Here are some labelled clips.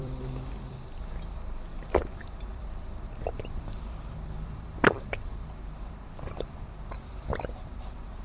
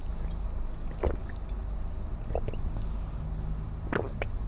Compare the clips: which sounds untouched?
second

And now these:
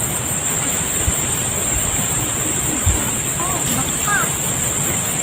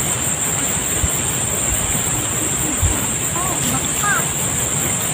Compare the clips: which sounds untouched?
second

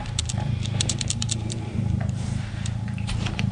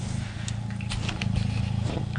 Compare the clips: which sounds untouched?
second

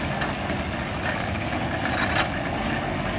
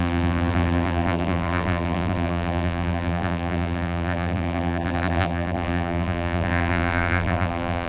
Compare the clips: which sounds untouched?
first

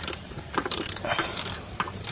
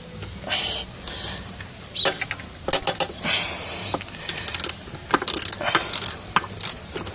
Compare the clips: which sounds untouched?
second